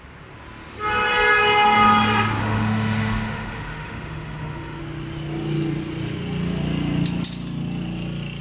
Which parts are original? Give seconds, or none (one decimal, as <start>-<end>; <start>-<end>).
0.0-2.4; 4.8-8.4